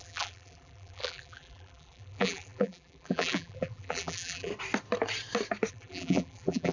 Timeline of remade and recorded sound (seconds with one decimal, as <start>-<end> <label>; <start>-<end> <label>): 0.0-4.5 remade; 4.5-5.7 recorded; 5.7-6.7 remade

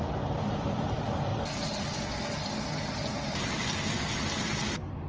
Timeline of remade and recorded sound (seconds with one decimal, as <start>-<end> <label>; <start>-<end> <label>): 0.0-5.1 recorded